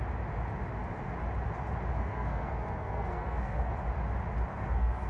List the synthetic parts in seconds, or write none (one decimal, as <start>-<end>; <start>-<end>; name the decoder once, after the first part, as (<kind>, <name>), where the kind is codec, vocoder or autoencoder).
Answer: 2.0-3.7 (codec, SNAC); 4.5-5.1